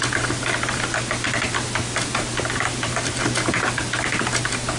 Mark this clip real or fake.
real